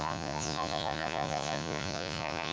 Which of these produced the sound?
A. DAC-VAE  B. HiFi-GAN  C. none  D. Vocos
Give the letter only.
D